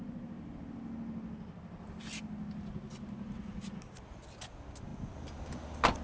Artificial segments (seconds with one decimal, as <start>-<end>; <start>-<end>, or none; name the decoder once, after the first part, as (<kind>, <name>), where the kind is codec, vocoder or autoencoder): none